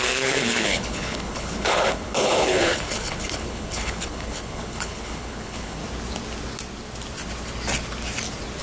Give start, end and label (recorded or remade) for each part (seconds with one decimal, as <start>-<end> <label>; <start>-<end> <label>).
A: 0.0-5.8 remade; 5.8-8.6 recorded